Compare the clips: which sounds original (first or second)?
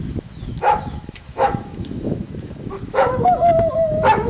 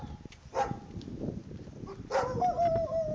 second